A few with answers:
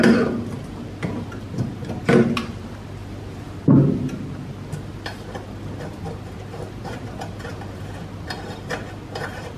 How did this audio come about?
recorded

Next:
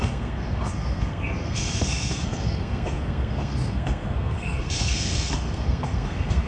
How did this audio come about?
remade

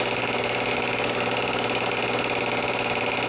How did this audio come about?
recorded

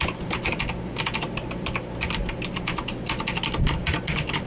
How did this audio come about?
recorded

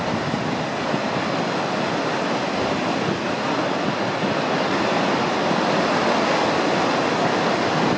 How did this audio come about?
recorded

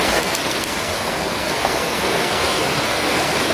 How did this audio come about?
remade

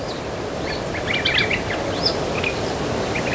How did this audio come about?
recorded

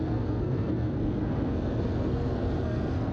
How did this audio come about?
remade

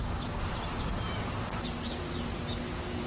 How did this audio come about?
recorded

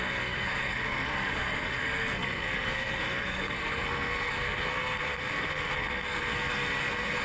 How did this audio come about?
remade